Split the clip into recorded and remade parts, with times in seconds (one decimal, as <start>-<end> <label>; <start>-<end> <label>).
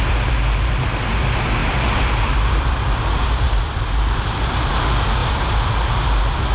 0.0-1.6 recorded; 1.6-4.7 remade; 4.7-5.2 recorded; 5.2-5.7 remade; 5.7-6.5 recorded